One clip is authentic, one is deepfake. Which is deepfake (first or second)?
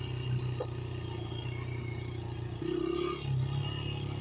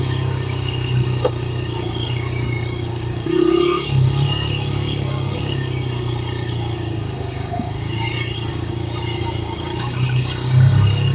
second